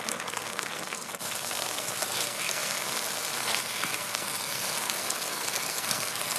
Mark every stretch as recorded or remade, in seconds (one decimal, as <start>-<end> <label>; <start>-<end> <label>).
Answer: 0.0-6.4 remade